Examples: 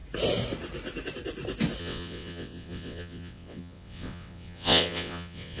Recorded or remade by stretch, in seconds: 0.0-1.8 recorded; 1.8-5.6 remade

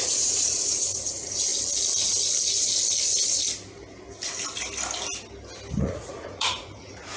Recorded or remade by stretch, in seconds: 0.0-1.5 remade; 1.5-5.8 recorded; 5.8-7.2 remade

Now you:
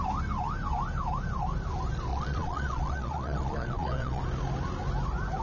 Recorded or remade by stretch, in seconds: 0.0-2.1 recorded; 2.1-4.2 remade; 4.2-5.4 recorded

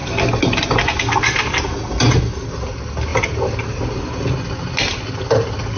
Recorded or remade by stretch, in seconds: 0.0-5.8 recorded

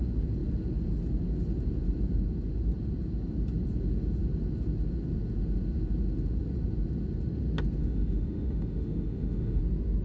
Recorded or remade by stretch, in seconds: 0.0-7.8 recorded; 7.8-9.6 remade; 9.6-10.0 recorded